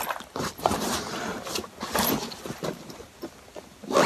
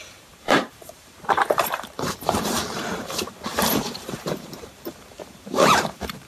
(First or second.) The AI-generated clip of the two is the second